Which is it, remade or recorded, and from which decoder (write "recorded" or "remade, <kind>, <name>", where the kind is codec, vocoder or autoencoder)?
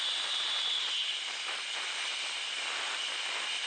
recorded